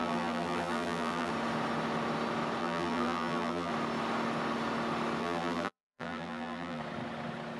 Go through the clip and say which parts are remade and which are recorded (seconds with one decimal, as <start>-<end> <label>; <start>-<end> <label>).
0.0-1.3 remade; 1.3-2.6 recorded; 2.6-3.7 remade; 3.7-5.2 recorded; 5.2-6.8 remade; 6.8-7.6 recorded